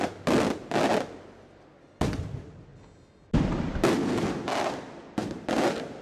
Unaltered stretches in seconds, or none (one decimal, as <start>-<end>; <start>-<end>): 0.0-6.0